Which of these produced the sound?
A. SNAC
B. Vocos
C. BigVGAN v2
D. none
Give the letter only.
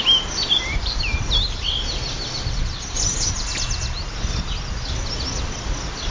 D